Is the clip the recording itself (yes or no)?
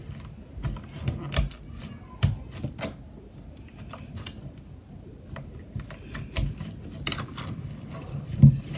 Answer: yes